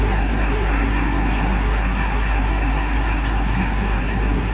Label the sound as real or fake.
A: fake